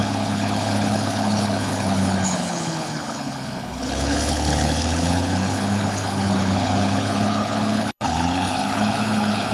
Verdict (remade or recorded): remade